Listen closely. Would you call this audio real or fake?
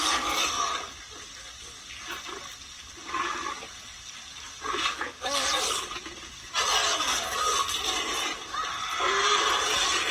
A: real